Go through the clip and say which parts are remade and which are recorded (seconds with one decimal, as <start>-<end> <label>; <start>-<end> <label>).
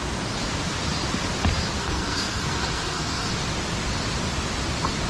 0.0-1.8 recorded; 1.8-3.3 remade; 3.3-5.1 recorded